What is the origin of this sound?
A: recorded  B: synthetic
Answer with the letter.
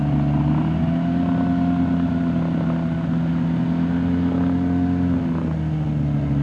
A